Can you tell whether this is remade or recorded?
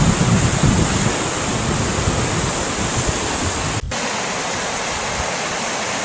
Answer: recorded